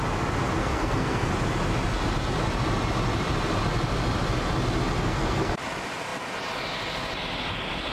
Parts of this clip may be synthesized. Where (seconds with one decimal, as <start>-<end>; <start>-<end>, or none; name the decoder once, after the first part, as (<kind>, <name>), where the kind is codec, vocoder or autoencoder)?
0.6-1.3 (codec, SNAC); 5.0-5.6